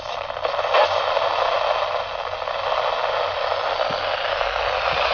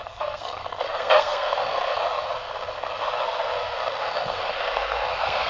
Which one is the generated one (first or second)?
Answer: second